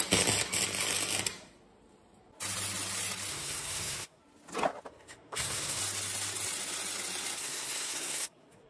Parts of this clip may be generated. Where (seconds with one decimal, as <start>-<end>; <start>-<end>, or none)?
3.3-4.2; 4.9-5.8; 7.4-8.7